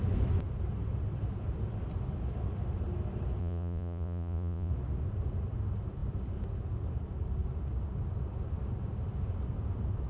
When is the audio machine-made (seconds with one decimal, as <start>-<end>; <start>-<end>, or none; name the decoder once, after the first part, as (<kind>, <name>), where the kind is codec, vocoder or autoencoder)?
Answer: 3.4-4.7 (vocoder, Vocos)